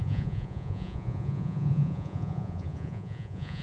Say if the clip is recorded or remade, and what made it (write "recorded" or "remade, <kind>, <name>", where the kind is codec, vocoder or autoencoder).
remade, vocoder, Vocos